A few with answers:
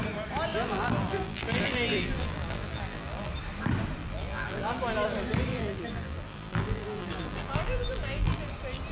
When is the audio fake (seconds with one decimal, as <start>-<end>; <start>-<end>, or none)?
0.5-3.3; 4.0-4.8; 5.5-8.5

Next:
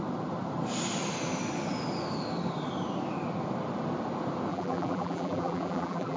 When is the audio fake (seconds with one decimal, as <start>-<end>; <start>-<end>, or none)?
4.5-6.2

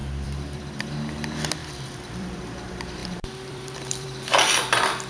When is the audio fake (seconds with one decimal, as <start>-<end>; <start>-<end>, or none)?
0.0-0.9; 1.6-2.4; 3.0-4.2